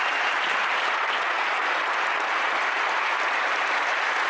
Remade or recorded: remade